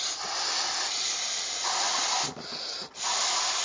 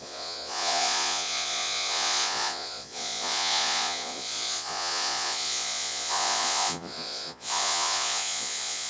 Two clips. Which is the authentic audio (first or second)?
first